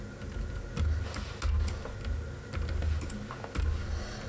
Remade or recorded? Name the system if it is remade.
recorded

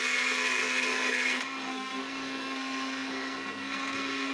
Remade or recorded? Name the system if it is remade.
remade, codec, SNAC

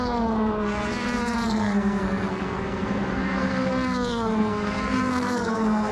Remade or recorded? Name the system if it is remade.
remade, codec, SNAC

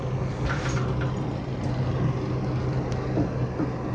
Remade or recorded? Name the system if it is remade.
recorded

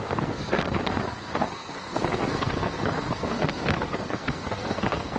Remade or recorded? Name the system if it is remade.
remade, codec, SNAC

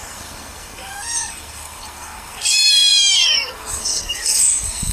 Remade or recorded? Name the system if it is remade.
remade, codec, SNAC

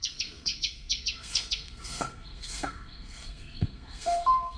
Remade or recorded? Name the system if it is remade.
remade, codec, SNAC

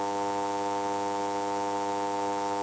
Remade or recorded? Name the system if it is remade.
recorded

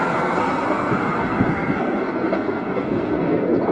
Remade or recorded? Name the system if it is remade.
remade, codec, SNAC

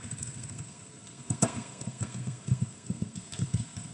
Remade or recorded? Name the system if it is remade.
remade, codec, SNAC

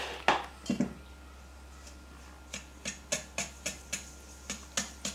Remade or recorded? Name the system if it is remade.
recorded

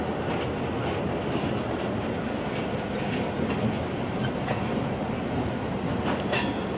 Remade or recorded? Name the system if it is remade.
recorded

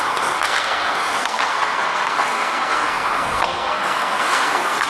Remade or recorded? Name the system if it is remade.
remade, codec, SNAC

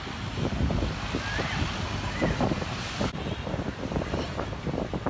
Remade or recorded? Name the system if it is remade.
recorded